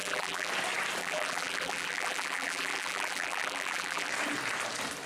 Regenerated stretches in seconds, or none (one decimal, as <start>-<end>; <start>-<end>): 0.0-0.5; 1.0-4.1